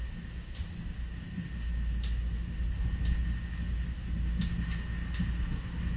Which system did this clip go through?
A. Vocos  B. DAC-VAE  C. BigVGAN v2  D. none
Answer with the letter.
D